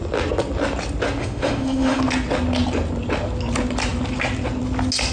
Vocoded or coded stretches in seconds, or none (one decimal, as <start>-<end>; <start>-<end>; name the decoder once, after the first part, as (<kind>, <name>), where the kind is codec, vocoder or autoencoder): 1.2-2.0 (autoencoder, DAC-VAE)